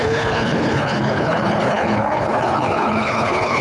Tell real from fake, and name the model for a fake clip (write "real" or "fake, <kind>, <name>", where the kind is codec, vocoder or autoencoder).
fake, codec, HILCodec